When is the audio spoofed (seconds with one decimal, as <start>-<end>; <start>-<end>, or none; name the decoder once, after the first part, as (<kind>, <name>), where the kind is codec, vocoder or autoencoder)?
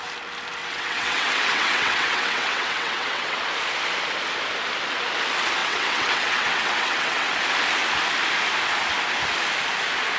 0.6-3.4 (vocoder, WaveNeXt); 5.6-7.4